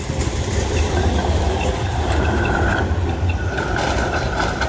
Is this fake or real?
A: fake